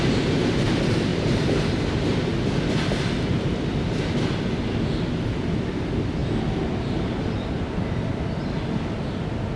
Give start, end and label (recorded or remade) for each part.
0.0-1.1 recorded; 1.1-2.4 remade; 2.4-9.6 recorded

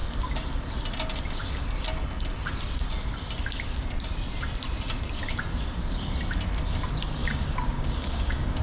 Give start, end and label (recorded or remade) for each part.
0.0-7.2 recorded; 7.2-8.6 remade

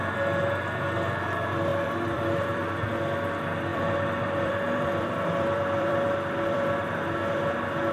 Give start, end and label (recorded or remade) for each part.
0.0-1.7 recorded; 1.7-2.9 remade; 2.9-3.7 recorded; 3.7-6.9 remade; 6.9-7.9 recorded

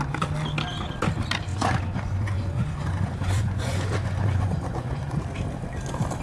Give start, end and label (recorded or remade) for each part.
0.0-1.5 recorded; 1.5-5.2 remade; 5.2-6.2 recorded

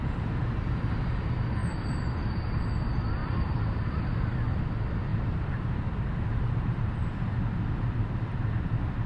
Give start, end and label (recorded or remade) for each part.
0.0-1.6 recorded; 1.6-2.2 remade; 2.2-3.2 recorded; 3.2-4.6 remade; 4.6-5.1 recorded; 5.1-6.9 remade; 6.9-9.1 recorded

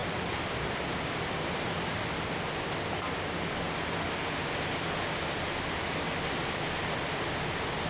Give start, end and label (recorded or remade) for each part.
0.0-7.9 recorded

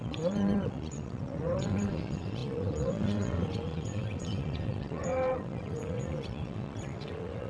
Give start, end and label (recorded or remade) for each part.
0.0-7.5 remade